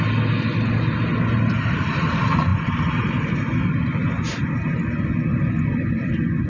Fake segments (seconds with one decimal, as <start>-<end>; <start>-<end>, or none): 2.5-3.3